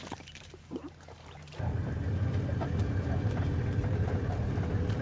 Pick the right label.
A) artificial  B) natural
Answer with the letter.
A